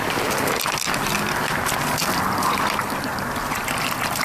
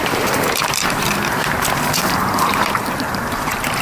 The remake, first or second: second